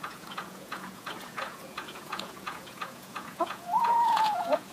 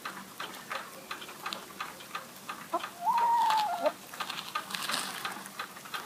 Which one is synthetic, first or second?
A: first